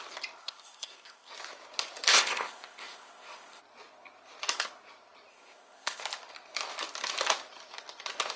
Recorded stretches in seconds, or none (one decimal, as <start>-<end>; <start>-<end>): 0.0-0.4; 1.3-2.1; 3.6-5.3; 6.0-8.4